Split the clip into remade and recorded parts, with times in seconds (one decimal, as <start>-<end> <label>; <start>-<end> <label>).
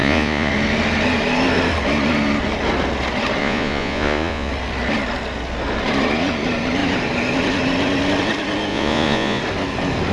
0.0-0.5 remade; 0.5-3.4 recorded; 3.4-4.5 remade; 4.5-8.7 recorded; 8.7-9.4 remade; 9.4-10.1 recorded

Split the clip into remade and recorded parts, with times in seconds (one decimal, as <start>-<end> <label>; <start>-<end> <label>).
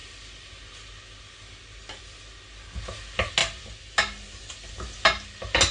0.0-5.7 recorded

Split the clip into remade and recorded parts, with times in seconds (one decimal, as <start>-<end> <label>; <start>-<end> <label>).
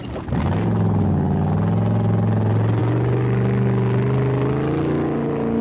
0.0-5.6 recorded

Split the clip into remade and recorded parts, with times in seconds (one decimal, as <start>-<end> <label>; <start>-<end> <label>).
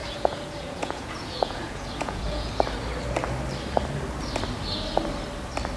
0.0-2.5 remade; 2.5-5.8 recorded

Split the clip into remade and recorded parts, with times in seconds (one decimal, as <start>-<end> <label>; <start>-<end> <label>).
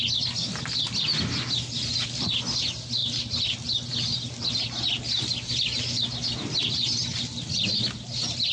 0.0-8.5 recorded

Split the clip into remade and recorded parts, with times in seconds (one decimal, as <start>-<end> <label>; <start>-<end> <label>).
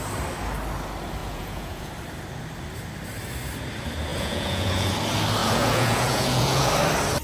0.0-1.2 recorded; 1.2-1.9 remade; 1.9-4.1 recorded; 4.1-4.9 remade; 4.9-5.4 recorded; 5.4-6.7 remade; 6.7-7.2 recorded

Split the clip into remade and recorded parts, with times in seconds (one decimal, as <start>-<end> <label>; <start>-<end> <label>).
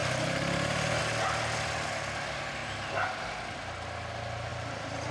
0.0-4.5 recorded; 4.5-5.1 remade